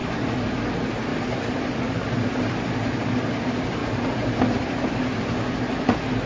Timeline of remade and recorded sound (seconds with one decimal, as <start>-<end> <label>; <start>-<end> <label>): 0.0-0.6 recorded; 0.6-6.3 remade